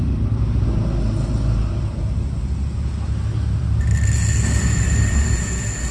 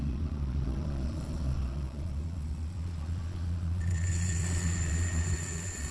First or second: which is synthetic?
second